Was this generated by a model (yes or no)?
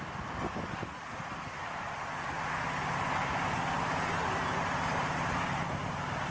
no